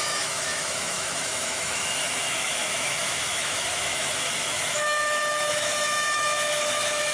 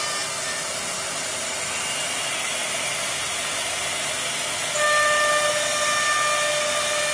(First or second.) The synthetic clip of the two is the first